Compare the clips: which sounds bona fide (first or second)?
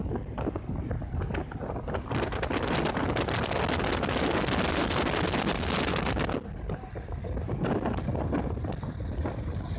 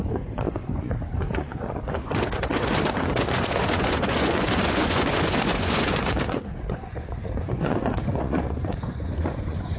first